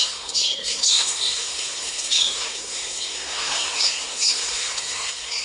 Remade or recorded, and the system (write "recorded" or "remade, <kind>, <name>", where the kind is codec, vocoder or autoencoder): remade, codec, SNAC